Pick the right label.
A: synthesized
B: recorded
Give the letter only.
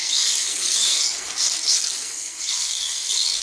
A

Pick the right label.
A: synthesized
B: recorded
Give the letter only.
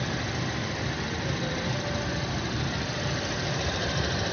B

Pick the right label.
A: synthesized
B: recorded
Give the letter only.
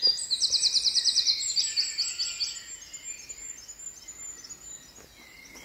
B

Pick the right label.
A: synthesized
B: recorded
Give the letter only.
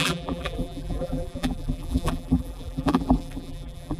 A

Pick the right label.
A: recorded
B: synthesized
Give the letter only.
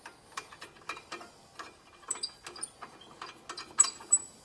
A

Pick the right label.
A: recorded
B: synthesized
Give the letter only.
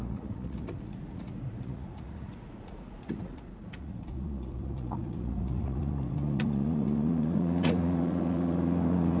B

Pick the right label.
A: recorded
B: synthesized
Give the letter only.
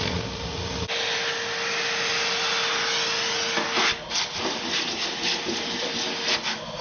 A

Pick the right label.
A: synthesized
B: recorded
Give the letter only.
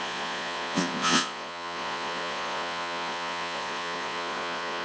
A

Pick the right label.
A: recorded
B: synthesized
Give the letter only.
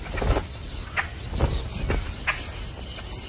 A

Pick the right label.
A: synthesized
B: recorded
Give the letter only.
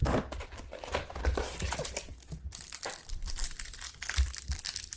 A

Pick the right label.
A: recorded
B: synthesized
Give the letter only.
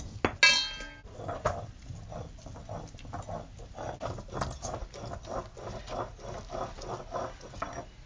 A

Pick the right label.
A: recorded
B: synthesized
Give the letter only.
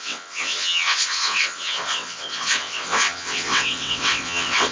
B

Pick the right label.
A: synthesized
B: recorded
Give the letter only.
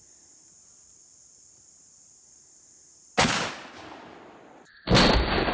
B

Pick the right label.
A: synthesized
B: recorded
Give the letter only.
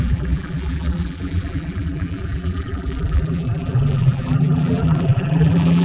A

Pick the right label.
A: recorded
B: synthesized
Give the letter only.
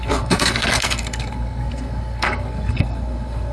B